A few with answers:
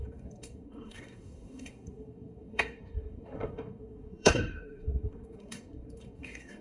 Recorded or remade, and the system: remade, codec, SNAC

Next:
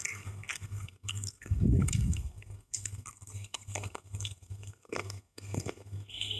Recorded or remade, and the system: remade, codec, SNAC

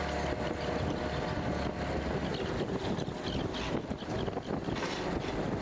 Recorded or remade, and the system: recorded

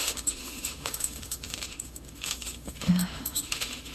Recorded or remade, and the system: remade, autoencoder, DAC-VAE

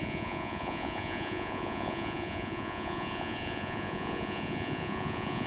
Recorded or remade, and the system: remade, vocoder, Vocos